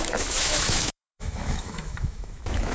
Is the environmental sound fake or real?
fake